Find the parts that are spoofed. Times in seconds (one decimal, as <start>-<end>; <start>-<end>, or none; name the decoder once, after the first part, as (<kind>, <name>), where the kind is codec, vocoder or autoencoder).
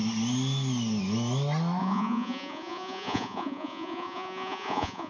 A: 1.8-5.1 (vocoder, Vocos)